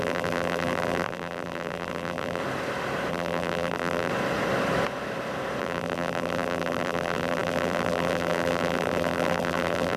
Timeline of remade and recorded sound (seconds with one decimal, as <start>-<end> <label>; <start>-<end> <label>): 0.0-2.4 remade; 2.4-3.1 recorded; 3.1-4.1 remade; 4.1-5.6 recorded; 5.6-10.0 remade